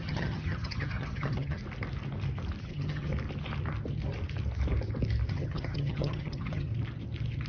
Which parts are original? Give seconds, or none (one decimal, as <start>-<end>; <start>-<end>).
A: 1.6-2.6; 3.1-5.3; 6.7-7.5